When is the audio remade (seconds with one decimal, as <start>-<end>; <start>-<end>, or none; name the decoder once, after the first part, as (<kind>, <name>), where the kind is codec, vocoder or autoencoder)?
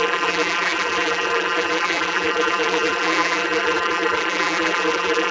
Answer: 0.0-5.3 (vocoder, BigVGAN v2)